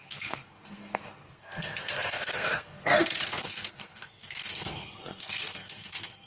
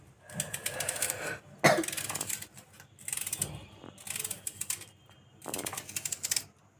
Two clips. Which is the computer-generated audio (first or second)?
first